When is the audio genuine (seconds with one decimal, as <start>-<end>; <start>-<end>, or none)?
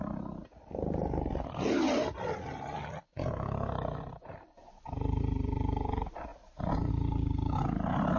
0.0-8.2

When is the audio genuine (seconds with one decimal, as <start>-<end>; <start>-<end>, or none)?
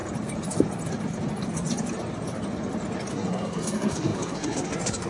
0.0-3.1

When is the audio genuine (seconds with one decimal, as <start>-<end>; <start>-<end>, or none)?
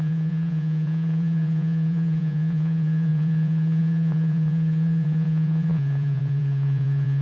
none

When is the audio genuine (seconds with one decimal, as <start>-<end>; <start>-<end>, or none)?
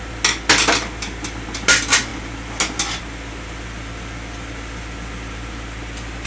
0.0-6.3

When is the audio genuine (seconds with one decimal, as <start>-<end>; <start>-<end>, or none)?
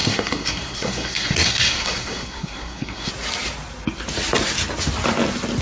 3.1-5.6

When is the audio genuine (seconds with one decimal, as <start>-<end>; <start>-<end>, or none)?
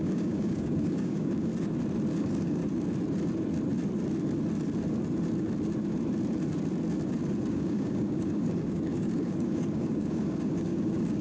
1.5-2.1; 2.6-7.5